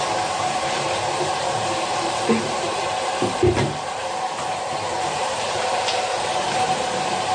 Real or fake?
fake